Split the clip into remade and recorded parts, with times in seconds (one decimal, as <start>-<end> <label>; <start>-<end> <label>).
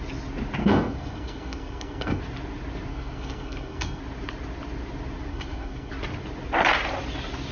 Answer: 0.0-0.6 recorded; 0.6-2.2 remade; 2.2-2.9 recorded; 2.9-4.0 remade; 4.0-5.3 recorded; 5.3-5.9 remade; 5.9-7.5 recorded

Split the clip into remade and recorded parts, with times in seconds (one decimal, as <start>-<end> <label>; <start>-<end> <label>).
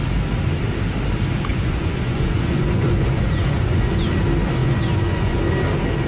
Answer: 0.0-1.5 recorded; 1.5-4.1 remade; 4.1-4.6 recorded; 4.6-5.4 remade; 5.4-6.1 recorded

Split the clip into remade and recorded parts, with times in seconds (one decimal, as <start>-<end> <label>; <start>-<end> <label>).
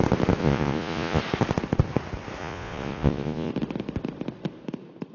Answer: 0.0-0.4 recorded; 0.4-1.2 remade; 1.2-2.4 recorded; 2.4-3.5 remade; 3.5-5.1 recorded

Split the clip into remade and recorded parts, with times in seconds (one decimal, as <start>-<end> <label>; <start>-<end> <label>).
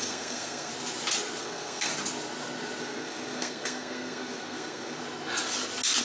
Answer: 0.0-0.7 remade; 0.7-1.4 recorded; 1.4-1.9 remade; 1.9-2.8 recorded; 2.8-5.0 remade; 5.0-6.0 recorded